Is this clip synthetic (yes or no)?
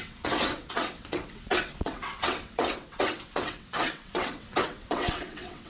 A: yes